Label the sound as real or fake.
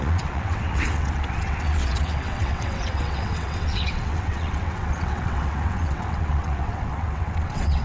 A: fake